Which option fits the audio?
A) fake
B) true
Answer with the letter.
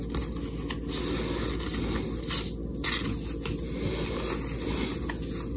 B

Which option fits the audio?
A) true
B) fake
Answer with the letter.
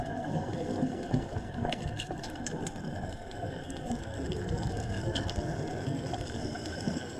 B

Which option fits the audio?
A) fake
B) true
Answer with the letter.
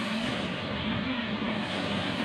A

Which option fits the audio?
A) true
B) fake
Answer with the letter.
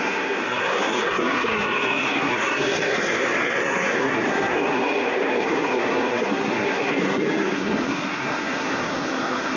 B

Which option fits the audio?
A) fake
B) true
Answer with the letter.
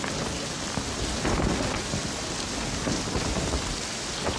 B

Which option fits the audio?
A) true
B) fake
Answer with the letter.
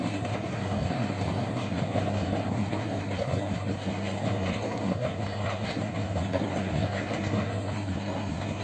B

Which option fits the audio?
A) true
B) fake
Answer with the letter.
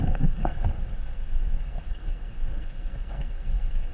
B